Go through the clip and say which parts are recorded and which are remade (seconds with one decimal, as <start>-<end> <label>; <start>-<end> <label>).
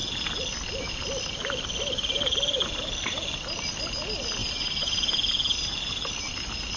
0.0-6.8 recorded